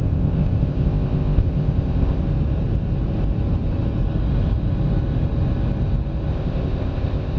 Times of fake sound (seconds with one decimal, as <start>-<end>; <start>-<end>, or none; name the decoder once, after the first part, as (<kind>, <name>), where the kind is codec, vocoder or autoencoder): 0.0-2.2 (codec, ZipCodec); 6.3-7.4